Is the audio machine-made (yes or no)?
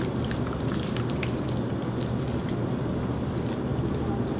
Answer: no